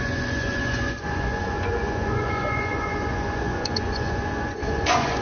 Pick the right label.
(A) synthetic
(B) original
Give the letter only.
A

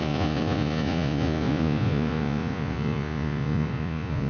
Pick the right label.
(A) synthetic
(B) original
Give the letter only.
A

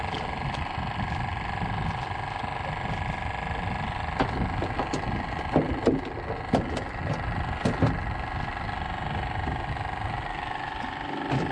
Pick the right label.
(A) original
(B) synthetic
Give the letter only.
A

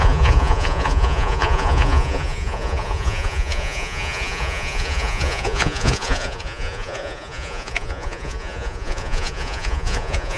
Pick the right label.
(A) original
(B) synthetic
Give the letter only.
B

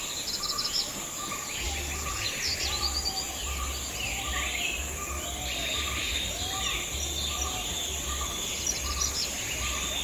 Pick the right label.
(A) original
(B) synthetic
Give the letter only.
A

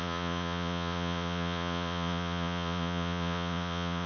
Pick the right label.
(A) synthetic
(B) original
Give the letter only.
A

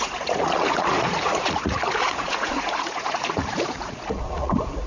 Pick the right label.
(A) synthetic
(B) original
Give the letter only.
A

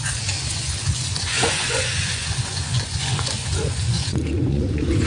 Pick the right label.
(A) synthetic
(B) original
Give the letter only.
A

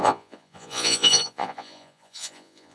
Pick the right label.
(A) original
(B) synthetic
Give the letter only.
B